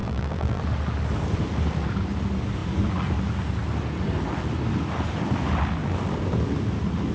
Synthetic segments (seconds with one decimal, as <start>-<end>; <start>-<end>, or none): 0.0-0.6